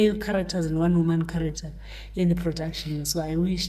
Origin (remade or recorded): remade